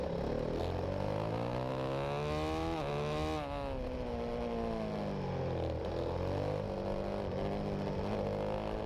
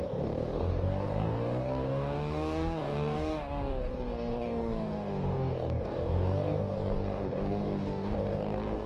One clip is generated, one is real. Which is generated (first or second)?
second